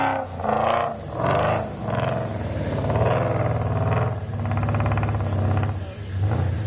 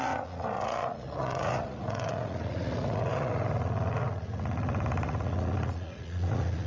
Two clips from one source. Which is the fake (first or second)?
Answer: second